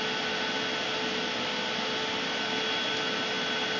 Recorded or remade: recorded